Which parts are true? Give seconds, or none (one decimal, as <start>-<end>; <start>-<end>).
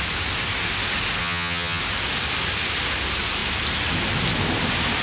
0.0-1.2; 1.8-5.0